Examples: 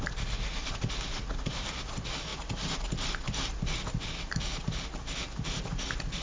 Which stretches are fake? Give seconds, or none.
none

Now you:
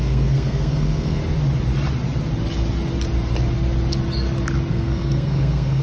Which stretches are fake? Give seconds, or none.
0.0-1.2 (codec, SNAC); 4.7-5.8

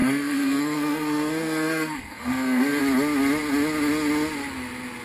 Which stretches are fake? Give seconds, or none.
0.0-2.8 (codec, SNAC)

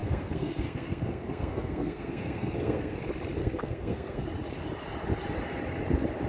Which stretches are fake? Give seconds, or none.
0.0-3.0 (codec, SNAC); 3.4-4.2

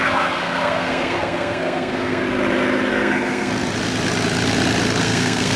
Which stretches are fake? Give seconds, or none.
0.0-2.2 (codec, SNAC); 2.9-3.5; 5.0-5.6

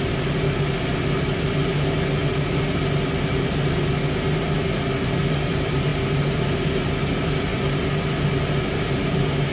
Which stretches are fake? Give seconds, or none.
none